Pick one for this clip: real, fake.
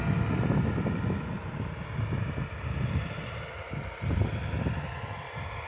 real